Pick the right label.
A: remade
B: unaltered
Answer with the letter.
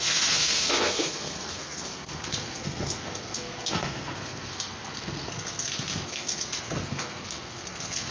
A